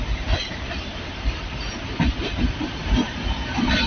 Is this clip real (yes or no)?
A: no